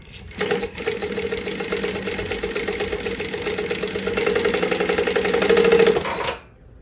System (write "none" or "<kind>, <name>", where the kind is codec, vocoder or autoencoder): none